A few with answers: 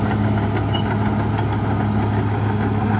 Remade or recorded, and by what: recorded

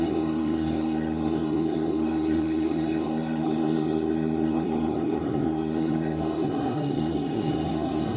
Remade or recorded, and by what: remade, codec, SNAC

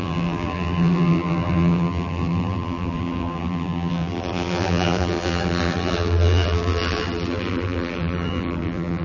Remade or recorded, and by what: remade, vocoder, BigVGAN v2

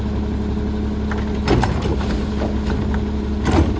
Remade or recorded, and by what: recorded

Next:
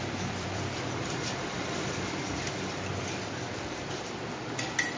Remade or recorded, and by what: remade, vocoder, BigVGAN v2